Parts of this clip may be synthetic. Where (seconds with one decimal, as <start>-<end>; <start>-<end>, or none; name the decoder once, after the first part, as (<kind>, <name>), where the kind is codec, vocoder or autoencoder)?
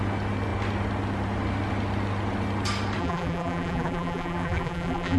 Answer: 3.0-5.2 (vocoder, BigVGAN v2)